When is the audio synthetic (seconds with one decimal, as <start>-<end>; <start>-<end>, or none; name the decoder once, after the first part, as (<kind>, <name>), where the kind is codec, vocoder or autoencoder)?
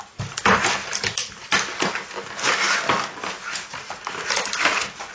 none